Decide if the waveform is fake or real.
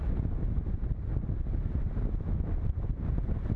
real